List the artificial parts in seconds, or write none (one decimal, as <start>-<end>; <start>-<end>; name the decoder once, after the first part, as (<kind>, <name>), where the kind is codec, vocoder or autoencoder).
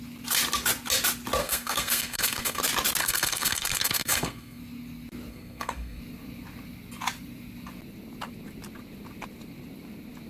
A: 1.4-2.6 (codec, SNAC); 3.0-4.6; 5.3-6.0